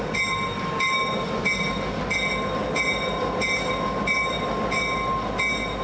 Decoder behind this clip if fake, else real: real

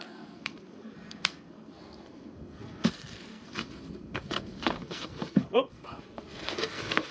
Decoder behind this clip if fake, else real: fake, codec, SNAC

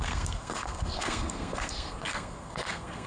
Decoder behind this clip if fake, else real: fake, codec, SNAC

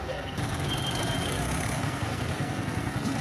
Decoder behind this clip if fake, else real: fake, codec, SNAC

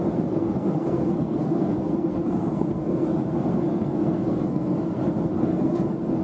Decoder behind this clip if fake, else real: fake, codec, SNAC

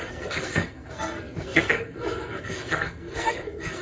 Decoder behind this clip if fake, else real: fake, codec, SNAC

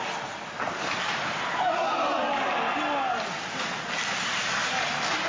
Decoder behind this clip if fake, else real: real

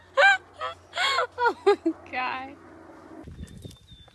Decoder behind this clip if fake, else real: real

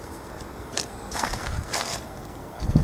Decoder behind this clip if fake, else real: fake, codec, SNAC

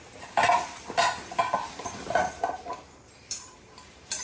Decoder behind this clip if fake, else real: real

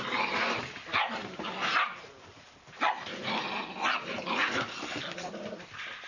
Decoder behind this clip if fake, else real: real